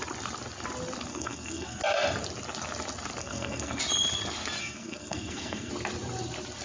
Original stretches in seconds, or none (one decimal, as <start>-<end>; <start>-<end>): 0.0-1.1; 1.8-3.2; 3.8-4.6; 5.7-6.6